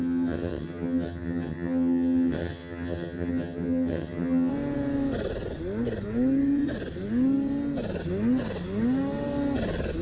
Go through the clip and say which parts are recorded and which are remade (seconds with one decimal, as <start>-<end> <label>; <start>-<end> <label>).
0.0-4.5 remade; 4.5-10.0 recorded

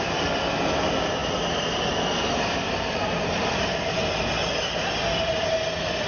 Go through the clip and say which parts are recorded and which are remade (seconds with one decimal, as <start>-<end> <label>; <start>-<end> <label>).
0.0-6.1 recorded

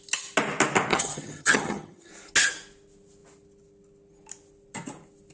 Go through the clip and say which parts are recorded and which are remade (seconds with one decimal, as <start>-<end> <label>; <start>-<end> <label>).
0.0-0.9 recorded; 0.9-2.1 remade; 2.1-5.3 recorded

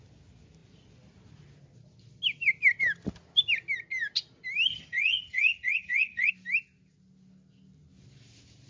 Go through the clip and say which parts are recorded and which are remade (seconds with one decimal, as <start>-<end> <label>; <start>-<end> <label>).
0.0-4.7 recorded; 4.7-6.3 remade; 6.3-8.7 recorded

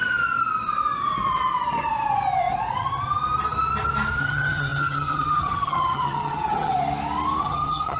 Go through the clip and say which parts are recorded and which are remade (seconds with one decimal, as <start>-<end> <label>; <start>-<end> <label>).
0.0-4.2 recorded; 4.2-6.7 remade; 6.7-7.4 recorded; 7.4-8.0 remade

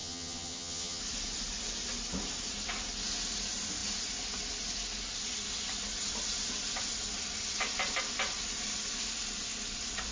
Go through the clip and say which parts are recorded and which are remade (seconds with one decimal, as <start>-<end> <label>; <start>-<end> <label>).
0.0-1.0 remade; 1.0-10.1 recorded